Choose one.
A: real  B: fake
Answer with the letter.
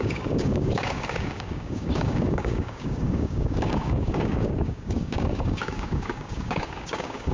B